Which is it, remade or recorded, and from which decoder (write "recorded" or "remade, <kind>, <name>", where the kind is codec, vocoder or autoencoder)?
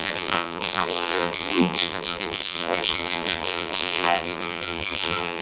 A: remade, vocoder, BigVGAN v2